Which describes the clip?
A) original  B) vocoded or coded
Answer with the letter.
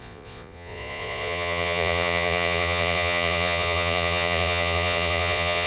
B